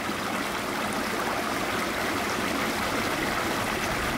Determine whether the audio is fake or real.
real